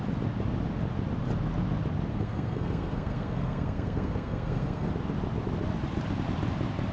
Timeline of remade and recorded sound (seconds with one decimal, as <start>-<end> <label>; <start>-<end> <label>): 0.0-2.1 recorded; 2.1-4.9 remade; 4.9-6.9 recorded